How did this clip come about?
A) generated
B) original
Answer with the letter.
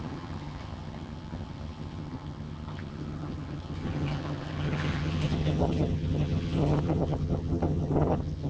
A